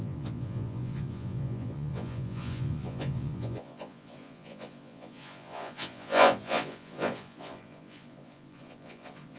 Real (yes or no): no